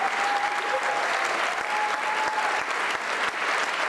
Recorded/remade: recorded